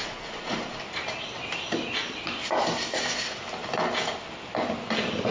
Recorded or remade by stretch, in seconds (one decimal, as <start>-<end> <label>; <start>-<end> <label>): 0.0-0.8 remade; 0.8-5.3 recorded